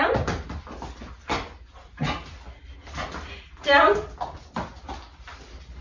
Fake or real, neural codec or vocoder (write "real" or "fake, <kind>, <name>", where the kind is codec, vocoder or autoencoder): real